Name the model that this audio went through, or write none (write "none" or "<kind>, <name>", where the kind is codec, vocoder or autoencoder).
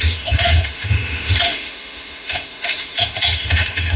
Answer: autoencoder, DAC-VAE